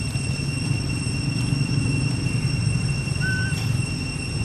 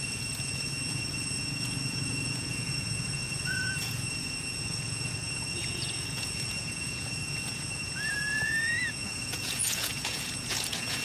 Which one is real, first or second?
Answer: first